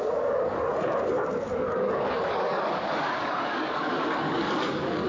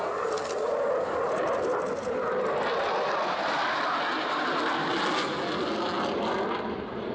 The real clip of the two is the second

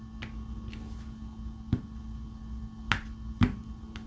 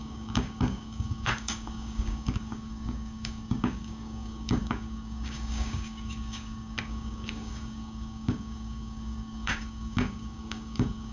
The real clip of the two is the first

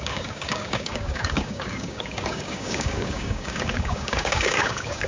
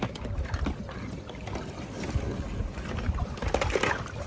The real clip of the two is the second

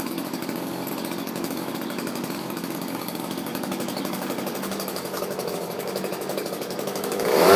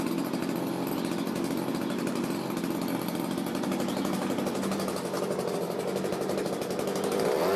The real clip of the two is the second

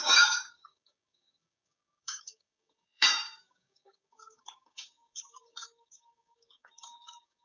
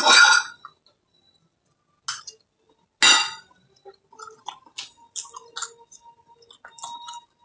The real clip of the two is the second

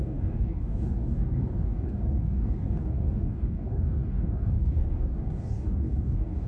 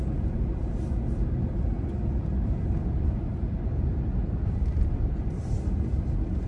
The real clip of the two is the second